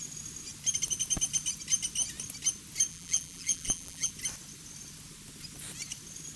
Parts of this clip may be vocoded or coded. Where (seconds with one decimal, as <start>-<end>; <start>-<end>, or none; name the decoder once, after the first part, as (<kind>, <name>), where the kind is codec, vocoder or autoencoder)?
2.9-4.1 (vocoder, BigVGAN v2)